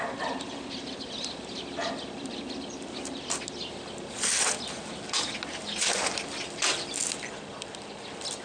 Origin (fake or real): real